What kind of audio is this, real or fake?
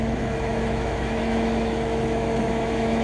fake